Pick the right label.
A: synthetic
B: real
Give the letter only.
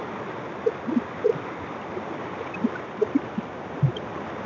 B